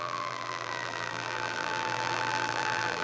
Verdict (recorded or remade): remade